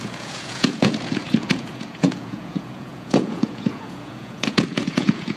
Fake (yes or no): yes